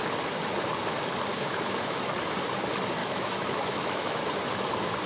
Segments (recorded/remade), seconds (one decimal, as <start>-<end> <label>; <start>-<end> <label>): 0.0-1.3 recorded; 1.3-2.1 remade; 2.1-3.0 recorded; 3.0-4.2 remade; 4.2-5.1 recorded